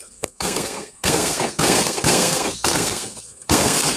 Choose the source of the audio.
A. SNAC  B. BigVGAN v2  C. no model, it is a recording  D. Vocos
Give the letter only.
A